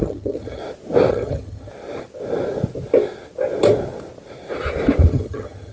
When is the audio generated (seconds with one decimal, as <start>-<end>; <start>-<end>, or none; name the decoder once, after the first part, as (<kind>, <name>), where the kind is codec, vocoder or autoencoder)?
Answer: 0.0-0.6 (vocoder, HiFi-GAN); 1.1-1.7; 5.1-5.7